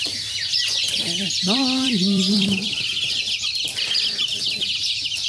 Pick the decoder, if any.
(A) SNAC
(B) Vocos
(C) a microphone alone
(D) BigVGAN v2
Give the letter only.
D